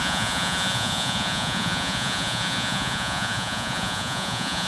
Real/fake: fake